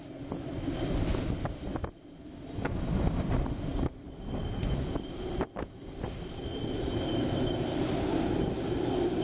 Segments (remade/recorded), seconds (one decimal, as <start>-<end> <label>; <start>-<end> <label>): 0.0-3.7 recorded; 3.7-4.3 remade; 4.3-9.2 recorded